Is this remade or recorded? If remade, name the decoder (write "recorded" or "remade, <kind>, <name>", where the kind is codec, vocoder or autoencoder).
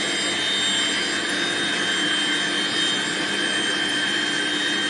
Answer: recorded